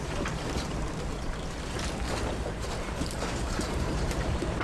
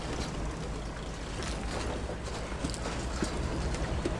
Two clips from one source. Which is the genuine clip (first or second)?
second